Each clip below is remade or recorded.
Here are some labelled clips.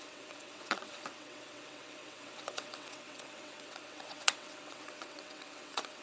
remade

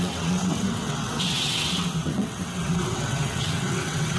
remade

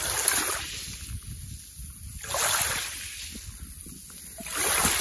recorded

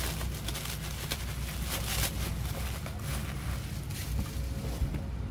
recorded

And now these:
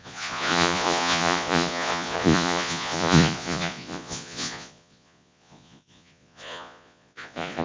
remade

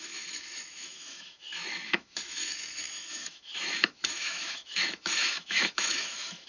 remade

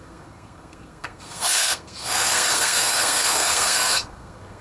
remade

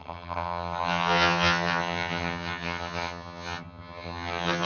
remade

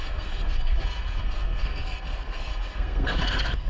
remade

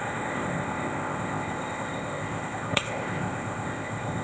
remade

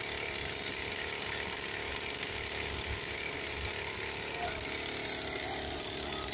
recorded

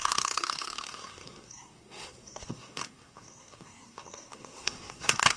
remade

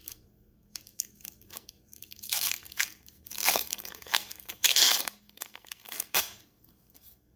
remade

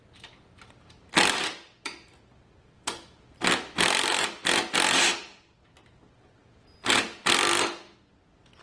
recorded